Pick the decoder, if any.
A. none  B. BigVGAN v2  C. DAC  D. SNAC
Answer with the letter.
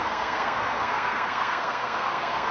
D